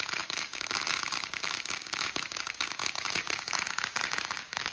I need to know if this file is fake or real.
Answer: fake